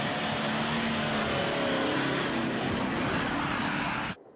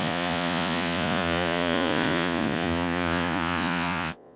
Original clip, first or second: first